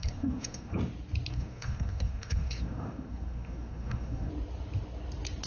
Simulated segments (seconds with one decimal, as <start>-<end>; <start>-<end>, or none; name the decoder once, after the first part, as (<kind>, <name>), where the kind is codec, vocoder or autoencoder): 0.0-0.8 (codec, SNAC); 1.3-4.3